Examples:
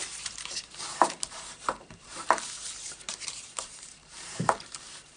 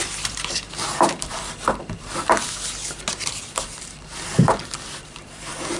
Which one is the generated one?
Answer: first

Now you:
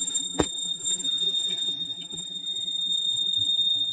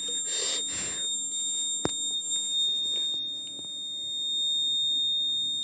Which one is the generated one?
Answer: first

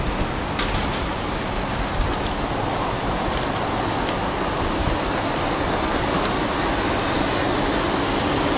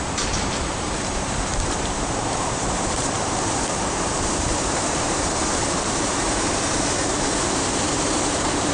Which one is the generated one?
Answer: second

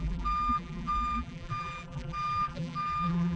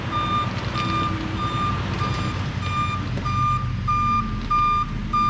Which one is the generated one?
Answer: first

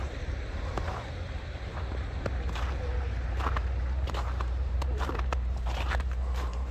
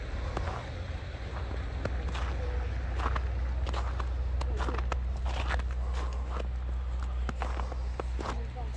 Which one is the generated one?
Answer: first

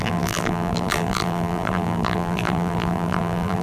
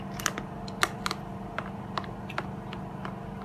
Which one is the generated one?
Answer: first